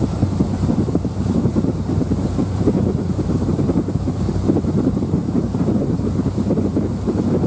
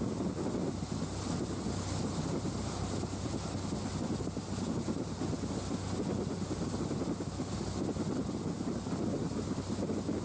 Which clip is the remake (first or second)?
first